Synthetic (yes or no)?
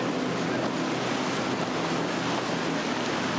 no